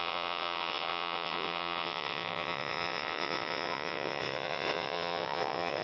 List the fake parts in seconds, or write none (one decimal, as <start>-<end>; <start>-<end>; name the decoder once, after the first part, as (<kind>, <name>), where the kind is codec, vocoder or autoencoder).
0.0-5.8 (vocoder, WaveNeXt)